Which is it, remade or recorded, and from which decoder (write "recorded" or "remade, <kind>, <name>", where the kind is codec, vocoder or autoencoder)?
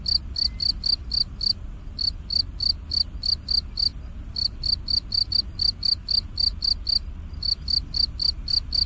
recorded